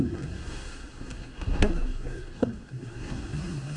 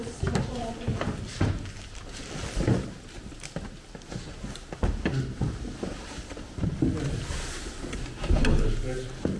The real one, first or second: second